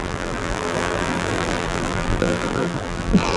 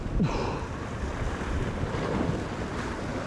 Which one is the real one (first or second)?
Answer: second